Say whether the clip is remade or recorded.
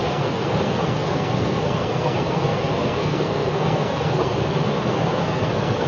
remade